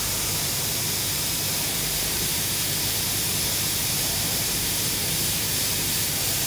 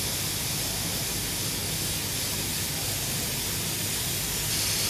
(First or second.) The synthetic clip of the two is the first